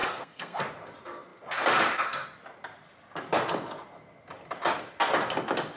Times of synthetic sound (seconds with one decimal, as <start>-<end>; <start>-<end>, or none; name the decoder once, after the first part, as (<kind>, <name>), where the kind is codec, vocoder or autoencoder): 0.0-0.6 (codec, SNAC)